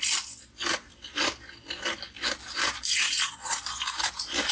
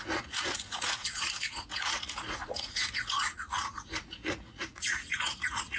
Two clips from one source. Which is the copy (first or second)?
second